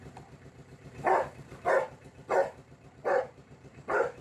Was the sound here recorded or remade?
remade